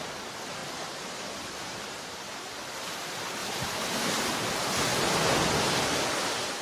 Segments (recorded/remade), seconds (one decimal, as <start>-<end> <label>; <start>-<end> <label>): 0.0-0.6 recorded; 0.6-2.0 remade; 2.0-3.4 recorded; 3.4-4.2 remade; 4.2-6.6 recorded